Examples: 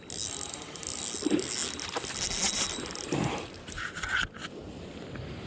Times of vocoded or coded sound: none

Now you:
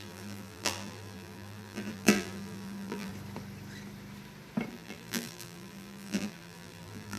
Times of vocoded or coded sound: 0.0-3.1 (vocoder, BigVGAN v2); 4.7-7.2

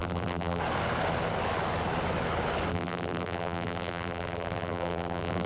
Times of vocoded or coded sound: 0.0-0.6 (vocoder, BigVGAN v2); 2.7-5.5

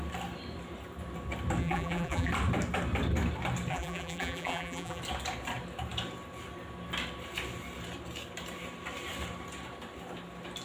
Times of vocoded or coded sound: 1.6-2.3 (vocoder, BigVGAN v2); 3.7-5.0

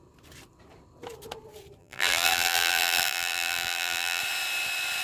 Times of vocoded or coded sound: 1.8-4.2 (vocoder, BigVGAN v2)

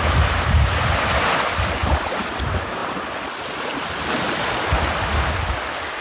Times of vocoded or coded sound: 1.8-2.4 (vocoder, BigVGAN v2)

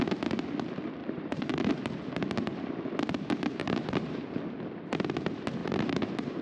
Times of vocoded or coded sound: 1.0-1.7 (vocoder, BigVGAN v2); 3.6-4.4; 5.6-6.4